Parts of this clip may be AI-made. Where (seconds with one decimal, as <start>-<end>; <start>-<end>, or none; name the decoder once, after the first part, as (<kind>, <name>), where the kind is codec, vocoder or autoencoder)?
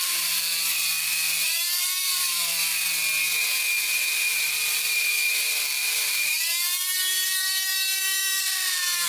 0.0-2.7 (vocoder, BigVGAN v2); 3.8-9.1